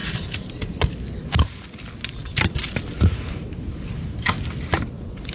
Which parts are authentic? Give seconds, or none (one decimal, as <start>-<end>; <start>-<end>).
0.0-5.3